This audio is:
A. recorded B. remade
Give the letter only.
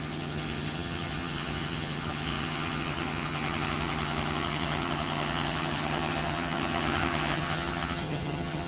B